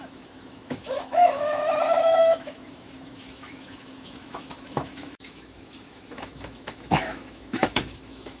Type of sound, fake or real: fake